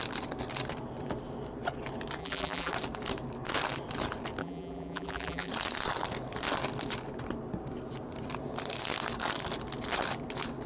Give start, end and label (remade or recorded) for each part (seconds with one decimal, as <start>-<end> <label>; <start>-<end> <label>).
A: 0.0-2.2 recorded; 2.2-2.7 remade; 2.7-4.4 recorded; 4.4-5.5 remade; 5.5-10.7 recorded